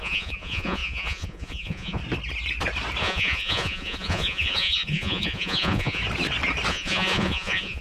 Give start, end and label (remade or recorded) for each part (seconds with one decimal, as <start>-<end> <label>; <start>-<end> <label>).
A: 0.0-2.0 remade; 2.0-3.0 recorded; 3.0-6.0 remade; 6.0-6.7 recorded; 6.7-7.8 remade